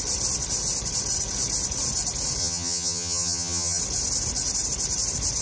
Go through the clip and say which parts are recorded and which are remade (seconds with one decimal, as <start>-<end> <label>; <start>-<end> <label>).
0.0-2.4 recorded; 2.4-3.8 remade; 3.8-5.4 recorded